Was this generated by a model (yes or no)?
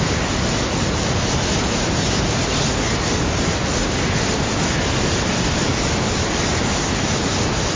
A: no